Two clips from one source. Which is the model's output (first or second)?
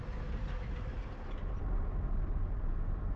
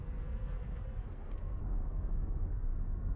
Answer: second